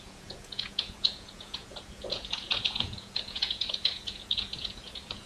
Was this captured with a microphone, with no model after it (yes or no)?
no